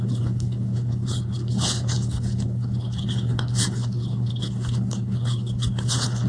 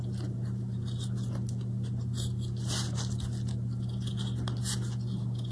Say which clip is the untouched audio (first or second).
second